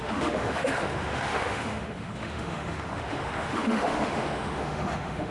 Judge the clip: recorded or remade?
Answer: remade